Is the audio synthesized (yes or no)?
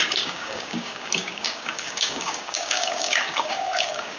yes